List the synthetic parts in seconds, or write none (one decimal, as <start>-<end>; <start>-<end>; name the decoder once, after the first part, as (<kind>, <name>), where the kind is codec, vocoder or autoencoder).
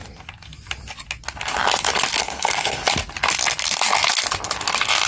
2.2-2.8 (codec, SNAC)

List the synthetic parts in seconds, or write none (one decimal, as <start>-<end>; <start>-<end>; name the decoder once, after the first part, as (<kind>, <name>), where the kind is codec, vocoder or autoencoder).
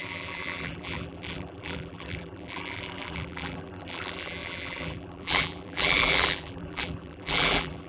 0.0-7.9 (vocoder, BigVGAN v2)